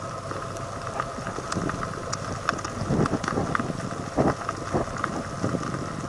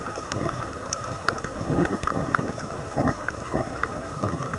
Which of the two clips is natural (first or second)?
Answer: first